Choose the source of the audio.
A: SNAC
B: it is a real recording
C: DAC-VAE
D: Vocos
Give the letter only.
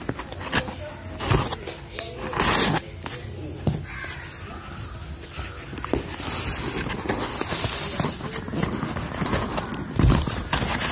B